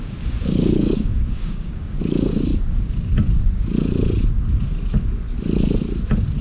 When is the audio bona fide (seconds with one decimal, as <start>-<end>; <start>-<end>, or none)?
2.5-6.4